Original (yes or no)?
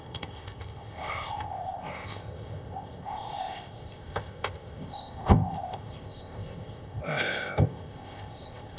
no